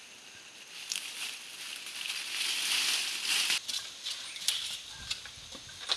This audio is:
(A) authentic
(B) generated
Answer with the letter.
A